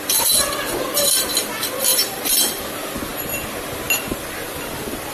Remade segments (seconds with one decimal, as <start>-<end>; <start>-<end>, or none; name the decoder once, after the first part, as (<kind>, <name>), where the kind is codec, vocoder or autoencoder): 1.9-2.6 (vocoder, BigVGAN v2)